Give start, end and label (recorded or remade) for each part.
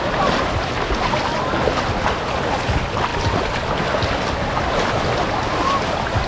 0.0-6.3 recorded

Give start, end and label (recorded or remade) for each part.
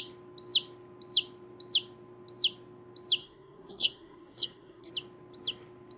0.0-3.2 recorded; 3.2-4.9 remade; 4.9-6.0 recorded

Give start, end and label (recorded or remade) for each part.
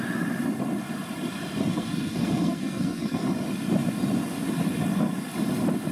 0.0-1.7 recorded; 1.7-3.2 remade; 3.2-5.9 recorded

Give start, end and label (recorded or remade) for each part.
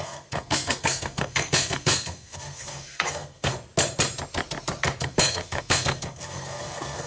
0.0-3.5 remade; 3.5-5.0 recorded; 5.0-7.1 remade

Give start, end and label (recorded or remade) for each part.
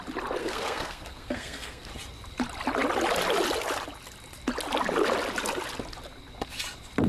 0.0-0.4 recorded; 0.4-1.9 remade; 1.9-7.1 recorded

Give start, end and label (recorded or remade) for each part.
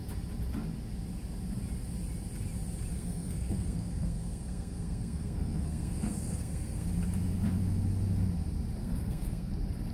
0.0-2.9 recorded; 2.9-6.9 remade; 6.9-8.8 recorded; 8.8-9.5 remade; 9.5-9.9 recorded